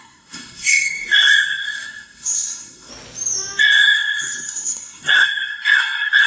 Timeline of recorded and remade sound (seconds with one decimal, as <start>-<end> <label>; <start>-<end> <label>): 0.0-2.9 remade; 2.9-3.6 recorded; 3.6-6.3 remade